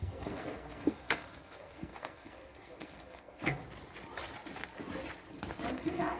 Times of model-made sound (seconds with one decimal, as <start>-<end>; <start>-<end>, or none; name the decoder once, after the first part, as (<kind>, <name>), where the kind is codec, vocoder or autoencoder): 0.0-3.6 (codec, SNAC); 5.7-6.2